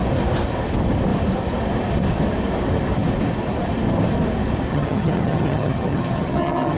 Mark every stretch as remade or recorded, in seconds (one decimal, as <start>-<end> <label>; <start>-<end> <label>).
0.0-4.7 recorded; 4.7-6.8 remade